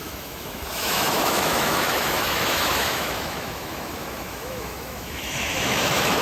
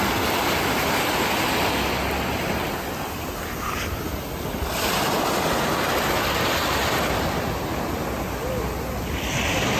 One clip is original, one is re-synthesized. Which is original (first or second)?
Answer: second